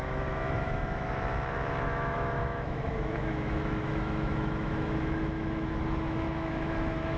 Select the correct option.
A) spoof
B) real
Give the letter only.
A